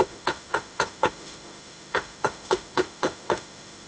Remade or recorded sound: remade